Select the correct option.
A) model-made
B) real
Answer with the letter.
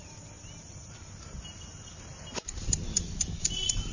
B